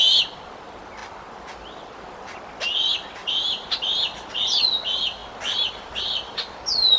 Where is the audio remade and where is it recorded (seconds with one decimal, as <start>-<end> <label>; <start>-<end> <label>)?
0.0-3.2 recorded; 3.2-4.0 remade; 4.0-7.0 recorded